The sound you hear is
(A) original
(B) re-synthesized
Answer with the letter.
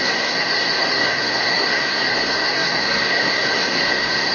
B